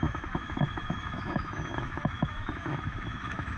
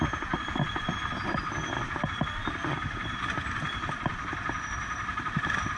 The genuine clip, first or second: second